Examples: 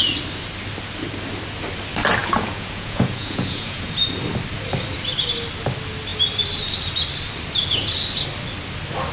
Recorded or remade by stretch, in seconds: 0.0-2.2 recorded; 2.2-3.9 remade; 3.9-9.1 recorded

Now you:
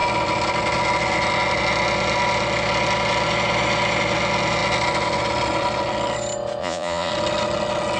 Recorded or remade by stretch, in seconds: 0.0-6.6 recorded; 6.6-7.1 remade; 7.1-8.0 recorded

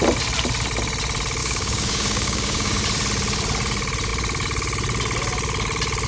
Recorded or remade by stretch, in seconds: 0.0-1.4 recorded; 1.4-2.8 remade; 2.8-6.1 recorded

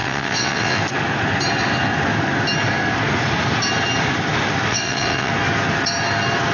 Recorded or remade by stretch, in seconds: 0.0-0.8 remade; 0.8-4.7 recorded; 4.7-5.3 remade; 5.3-6.5 recorded